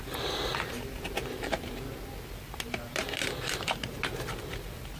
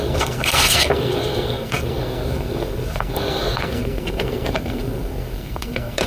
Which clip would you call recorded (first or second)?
first